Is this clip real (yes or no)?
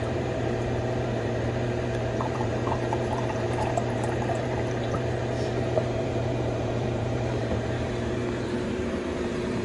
no